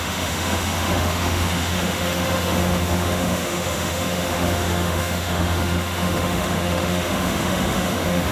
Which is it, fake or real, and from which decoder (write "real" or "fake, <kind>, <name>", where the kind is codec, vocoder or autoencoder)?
fake, autoencoder, DAC-VAE